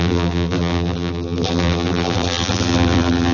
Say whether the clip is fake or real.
fake